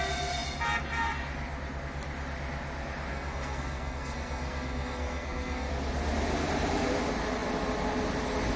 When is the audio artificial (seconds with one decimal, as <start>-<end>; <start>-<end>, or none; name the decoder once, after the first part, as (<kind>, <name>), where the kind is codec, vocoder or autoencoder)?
3.1-5.7 (codec, SNAC)